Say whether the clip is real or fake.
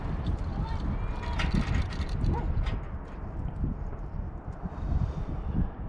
real